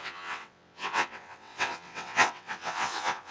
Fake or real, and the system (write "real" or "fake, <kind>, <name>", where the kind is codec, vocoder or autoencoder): fake, vocoder, WaveNeXt